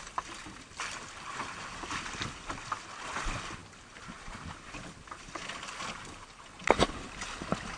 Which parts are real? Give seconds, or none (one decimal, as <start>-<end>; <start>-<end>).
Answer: 0.0-7.8